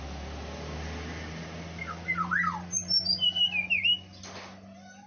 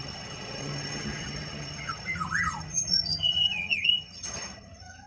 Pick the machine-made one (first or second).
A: second